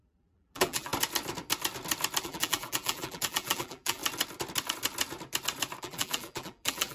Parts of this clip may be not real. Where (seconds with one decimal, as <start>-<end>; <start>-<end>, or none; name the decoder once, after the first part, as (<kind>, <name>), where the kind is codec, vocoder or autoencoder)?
0.0-0.9 (vocoder, BigVGAN v2); 2.2-4.0; 5.8-6.9